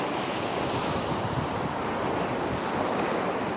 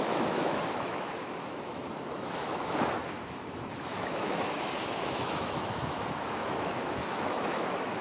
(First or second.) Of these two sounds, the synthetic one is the second